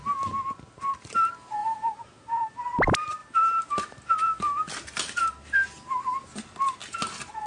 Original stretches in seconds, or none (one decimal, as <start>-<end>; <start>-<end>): 0.0-1.6; 2.5-3.2; 6.0-6.8